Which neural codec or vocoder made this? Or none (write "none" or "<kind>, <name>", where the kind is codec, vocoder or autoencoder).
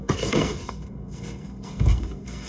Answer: codec, SNAC